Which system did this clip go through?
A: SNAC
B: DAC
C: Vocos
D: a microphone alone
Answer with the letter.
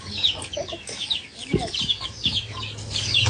B